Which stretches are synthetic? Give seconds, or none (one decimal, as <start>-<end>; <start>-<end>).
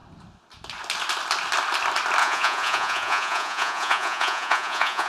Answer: 2.2-5.1